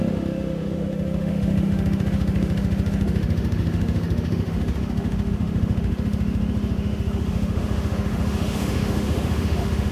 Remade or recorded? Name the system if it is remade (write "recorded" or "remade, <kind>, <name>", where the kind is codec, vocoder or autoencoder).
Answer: remade, autoencoder, DAC-VAE